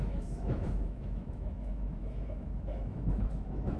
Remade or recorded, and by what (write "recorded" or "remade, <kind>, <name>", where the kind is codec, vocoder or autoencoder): remade, autoencoder, DAC-VAE